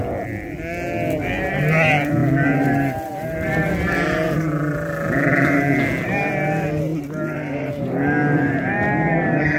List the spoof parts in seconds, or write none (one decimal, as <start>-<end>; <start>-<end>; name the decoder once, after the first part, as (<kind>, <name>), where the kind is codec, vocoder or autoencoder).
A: 2.2-3.1 (vocoder, BigVGAN v2); 6.9-7.8